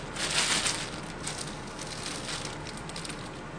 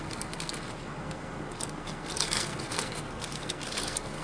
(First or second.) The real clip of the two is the first